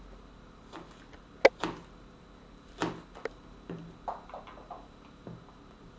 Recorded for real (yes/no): yes